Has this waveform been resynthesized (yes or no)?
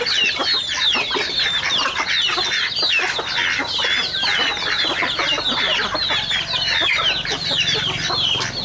no